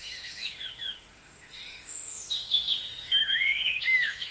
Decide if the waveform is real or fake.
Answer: fake